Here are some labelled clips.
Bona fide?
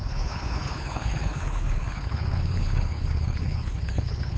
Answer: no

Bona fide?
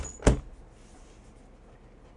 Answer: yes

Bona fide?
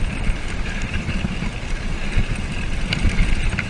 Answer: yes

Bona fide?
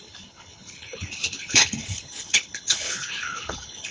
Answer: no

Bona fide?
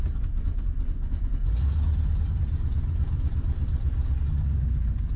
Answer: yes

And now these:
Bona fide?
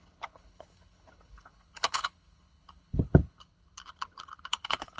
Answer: no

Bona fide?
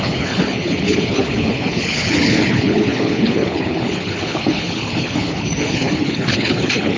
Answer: no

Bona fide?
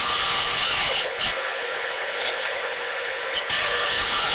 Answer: no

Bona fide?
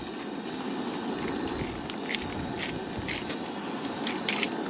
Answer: yes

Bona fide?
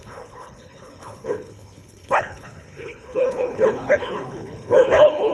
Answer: no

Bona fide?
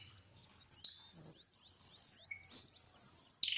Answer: yes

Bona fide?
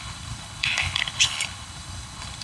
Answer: no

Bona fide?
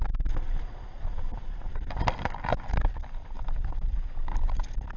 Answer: yes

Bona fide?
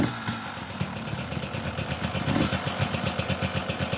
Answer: yes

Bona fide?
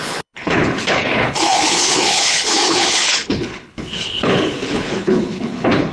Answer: no